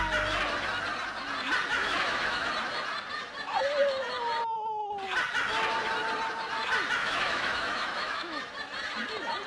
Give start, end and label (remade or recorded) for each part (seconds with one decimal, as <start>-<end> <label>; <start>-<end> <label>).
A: 0.0-1.7 recorded; 1.7-2.5 remade; 2.5-7.0 recorded; 7.0-8.4 remade; 8.4-9.5 recorded